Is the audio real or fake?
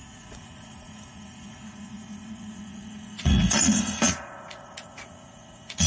fake